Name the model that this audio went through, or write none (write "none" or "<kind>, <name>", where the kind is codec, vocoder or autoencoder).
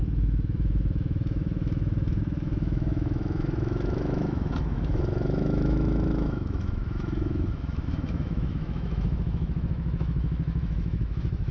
autoencoder, DAC-VAE